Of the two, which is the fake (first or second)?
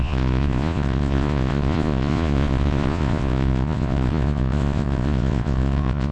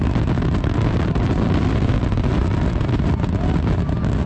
first